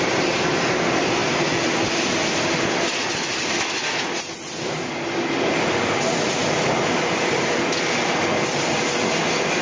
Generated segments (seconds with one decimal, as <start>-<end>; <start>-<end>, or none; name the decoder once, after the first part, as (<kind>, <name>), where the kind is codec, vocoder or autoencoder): none